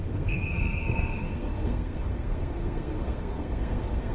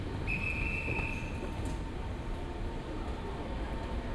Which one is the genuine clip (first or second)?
second